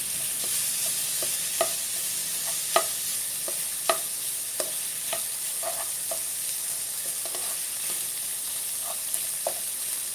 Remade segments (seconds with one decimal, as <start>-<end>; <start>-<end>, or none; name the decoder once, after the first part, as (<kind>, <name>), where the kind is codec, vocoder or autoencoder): none